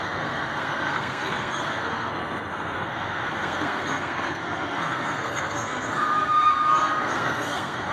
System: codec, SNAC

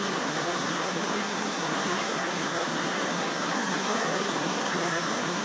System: codec, SNAC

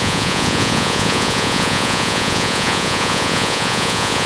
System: vocoder, Vocos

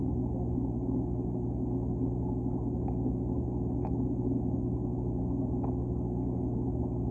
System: none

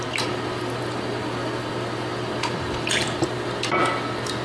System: none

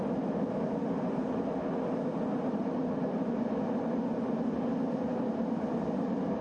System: none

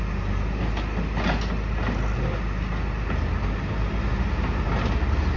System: none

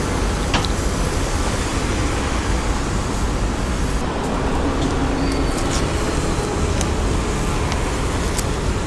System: none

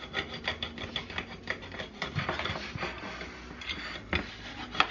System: none